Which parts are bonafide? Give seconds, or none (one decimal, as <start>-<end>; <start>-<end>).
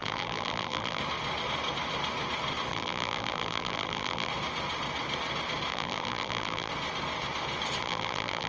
1.0-2.7; 4.3-5.7; 6.7-7.8